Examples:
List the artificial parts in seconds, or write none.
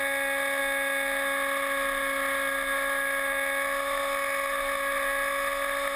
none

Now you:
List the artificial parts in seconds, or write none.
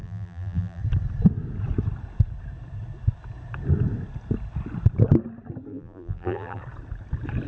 0.0-0.8 (vocoder, BigVGAN v2); 5.7-6.6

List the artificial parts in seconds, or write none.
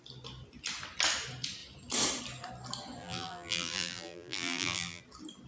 3.0-5.0 (vocoder, BigVGAN v2)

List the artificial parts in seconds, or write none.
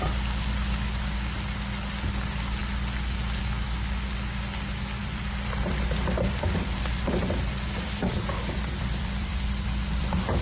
5.0-10.4 (vocoder, BigVGAN v2)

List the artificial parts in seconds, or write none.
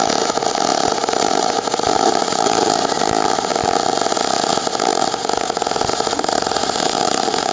0.7-3.0 (vocoder, BigVGAN v2); 5.9-7.5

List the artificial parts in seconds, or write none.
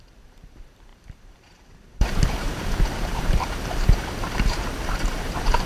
0.0-5.7 (vocoder, BigVGAN v2)